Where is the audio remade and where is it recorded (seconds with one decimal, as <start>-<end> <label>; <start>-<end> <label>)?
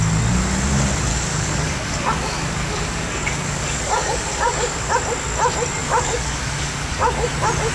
0.0-1.1 recorded; 1.1-4.9 remade; 4.9-5.8 recorded; 5.8-7.3 remade; 7.3-7.7 recorded